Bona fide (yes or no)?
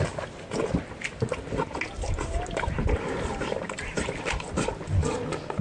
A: yes